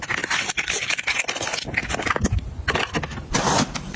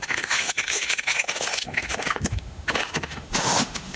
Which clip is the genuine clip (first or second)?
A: first